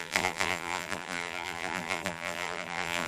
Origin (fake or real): fake